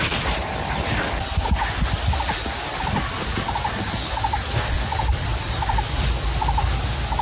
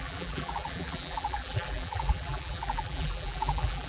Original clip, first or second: first